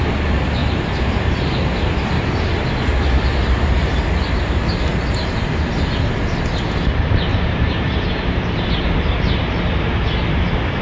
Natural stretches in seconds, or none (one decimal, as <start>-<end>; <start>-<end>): 0.0-0.6; 2.5-3.4; 4.1-7.3; 8.4-10.8